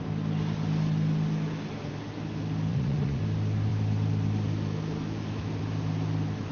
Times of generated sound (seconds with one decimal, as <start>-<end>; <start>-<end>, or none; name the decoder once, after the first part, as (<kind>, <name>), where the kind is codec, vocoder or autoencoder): 2.7-3.2 (vocoder, Vocos)